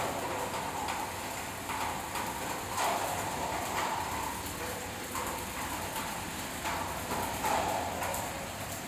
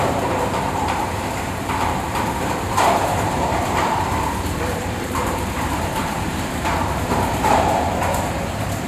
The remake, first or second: second